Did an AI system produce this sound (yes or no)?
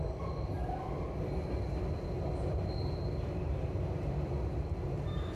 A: no